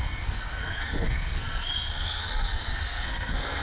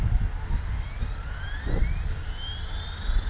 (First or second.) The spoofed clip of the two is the first